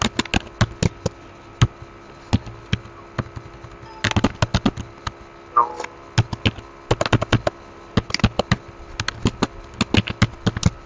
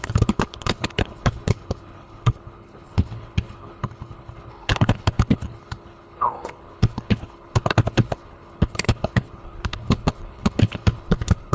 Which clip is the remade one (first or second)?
second